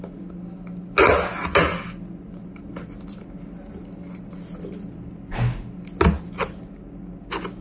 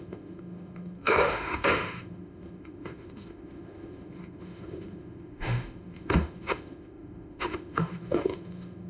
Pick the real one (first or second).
first